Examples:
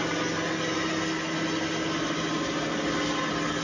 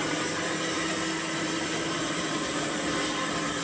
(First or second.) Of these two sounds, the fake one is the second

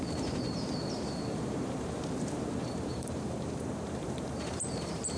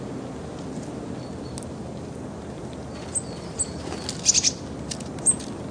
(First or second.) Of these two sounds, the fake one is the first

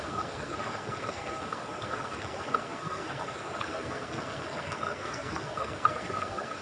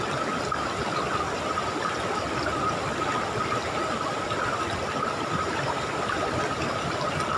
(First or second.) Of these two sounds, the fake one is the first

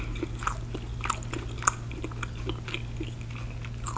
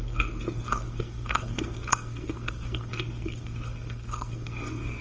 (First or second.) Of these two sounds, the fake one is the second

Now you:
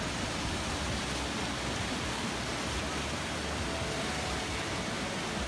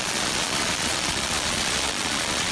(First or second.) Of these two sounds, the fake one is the second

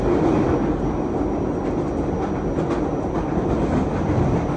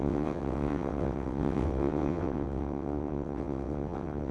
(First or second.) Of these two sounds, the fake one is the second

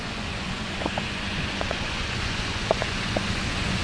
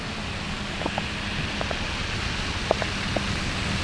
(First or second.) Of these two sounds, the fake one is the first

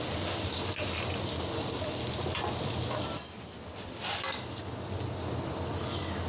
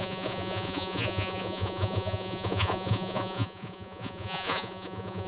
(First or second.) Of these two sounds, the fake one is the second